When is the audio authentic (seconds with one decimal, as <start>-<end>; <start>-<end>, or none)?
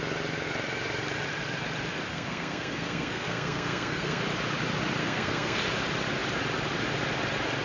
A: 0.0-2.1; 4.2-5.0; 5.6-7.6